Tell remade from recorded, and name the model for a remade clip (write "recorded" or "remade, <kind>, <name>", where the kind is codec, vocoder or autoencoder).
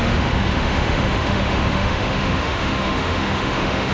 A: remade, autoencoder, DAC-VAE